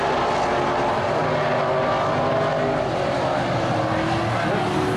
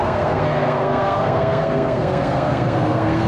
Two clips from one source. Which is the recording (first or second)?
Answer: first